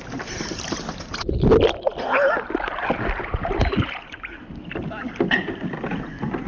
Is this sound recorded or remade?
recorded